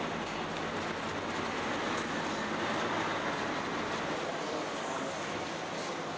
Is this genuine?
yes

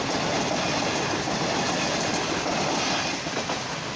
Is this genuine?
yes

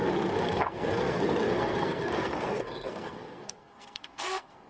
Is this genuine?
no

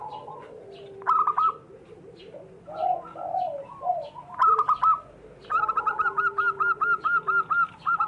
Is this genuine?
yes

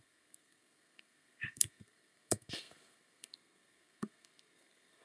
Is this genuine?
no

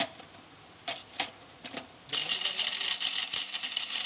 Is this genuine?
yes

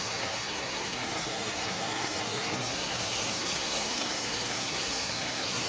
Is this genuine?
no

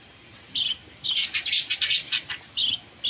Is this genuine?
yes